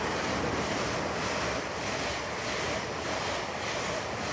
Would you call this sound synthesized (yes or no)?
no